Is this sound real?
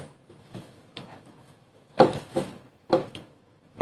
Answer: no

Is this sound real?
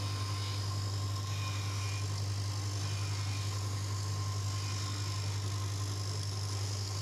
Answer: yes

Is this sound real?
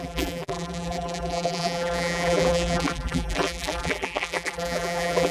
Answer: no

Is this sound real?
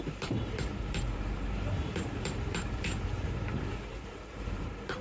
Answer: no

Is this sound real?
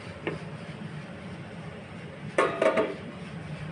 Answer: no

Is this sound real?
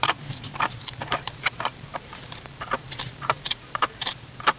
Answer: no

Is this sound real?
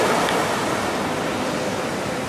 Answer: yes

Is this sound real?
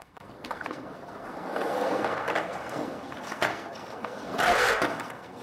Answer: no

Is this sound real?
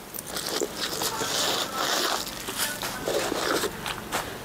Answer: yes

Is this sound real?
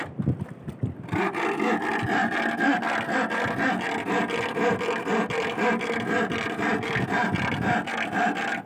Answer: yes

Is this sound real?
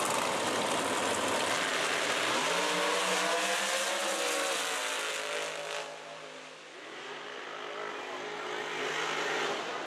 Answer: yes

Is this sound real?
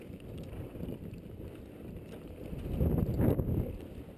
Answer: yes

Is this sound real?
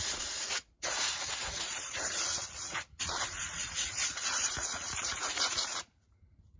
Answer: no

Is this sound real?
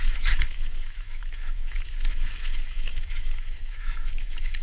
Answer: no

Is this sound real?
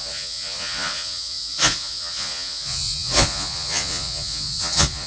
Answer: no